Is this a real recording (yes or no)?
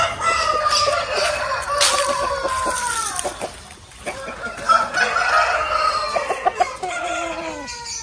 yes